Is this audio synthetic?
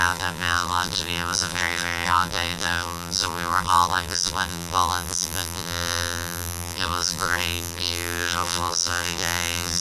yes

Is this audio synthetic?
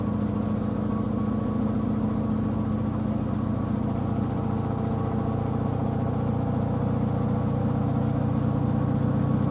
no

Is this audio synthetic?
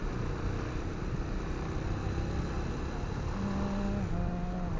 no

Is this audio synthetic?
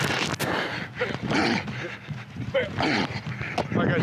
no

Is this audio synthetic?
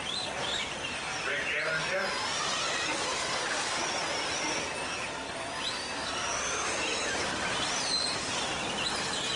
no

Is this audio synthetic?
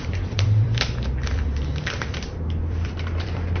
yes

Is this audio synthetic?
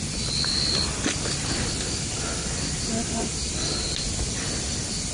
no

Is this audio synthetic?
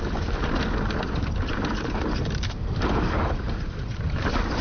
yes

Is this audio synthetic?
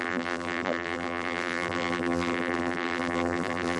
yes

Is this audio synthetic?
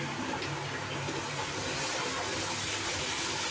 no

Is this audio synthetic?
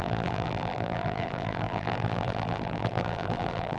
yes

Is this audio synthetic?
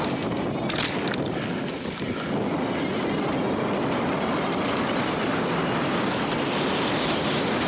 no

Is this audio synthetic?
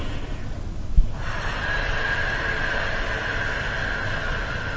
no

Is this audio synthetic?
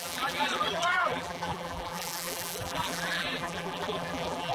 yes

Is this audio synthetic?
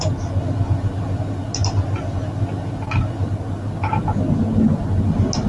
no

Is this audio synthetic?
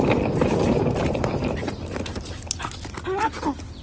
no